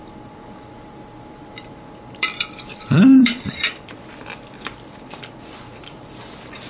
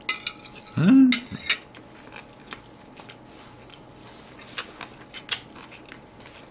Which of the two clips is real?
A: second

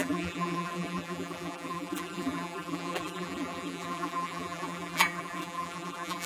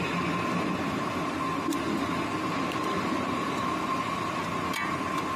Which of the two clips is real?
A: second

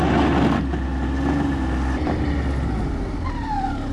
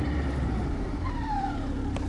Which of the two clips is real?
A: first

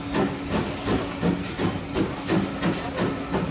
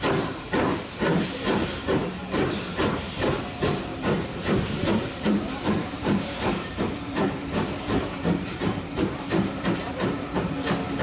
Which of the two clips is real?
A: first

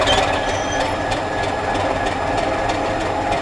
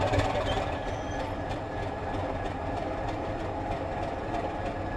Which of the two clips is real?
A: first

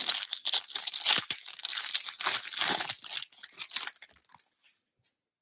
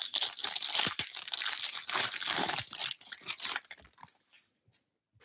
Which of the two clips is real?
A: first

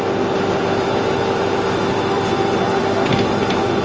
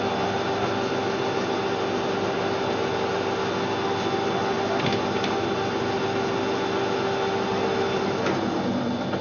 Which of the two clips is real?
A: second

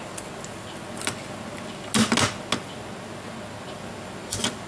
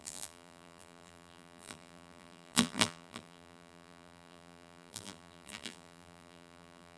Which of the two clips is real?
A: first